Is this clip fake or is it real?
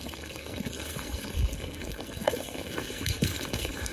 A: fake